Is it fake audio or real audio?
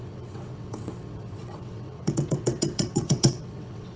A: fake